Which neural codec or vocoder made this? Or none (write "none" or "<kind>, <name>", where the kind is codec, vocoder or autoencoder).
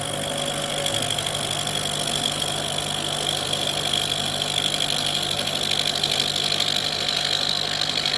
none